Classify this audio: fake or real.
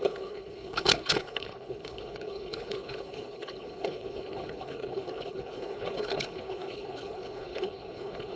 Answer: fake